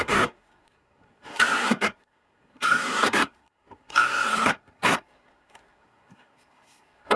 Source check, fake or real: fake